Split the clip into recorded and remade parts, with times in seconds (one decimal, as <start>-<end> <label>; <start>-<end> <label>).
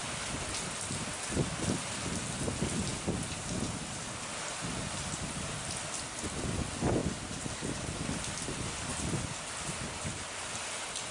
0.0-7.0 recorded; 7.0-7.5 remade; 7.5-8.9 recorded; 8.9-10.4 remade; 10.4-11.1 recorded